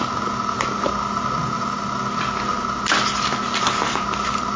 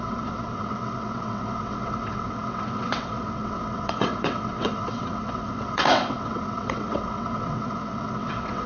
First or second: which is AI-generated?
second